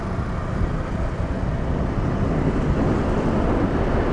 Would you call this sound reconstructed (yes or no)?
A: no